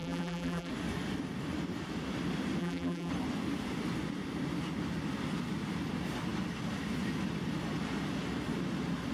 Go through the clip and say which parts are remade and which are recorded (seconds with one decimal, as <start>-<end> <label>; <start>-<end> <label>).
0.0-0.7 remade; 0.7-2.6 recorded; 2.6-3.1 remade; 3.1-9.1 recorded